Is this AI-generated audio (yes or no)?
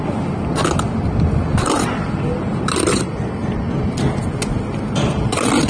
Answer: no